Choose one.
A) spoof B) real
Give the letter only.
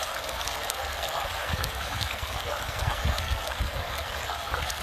A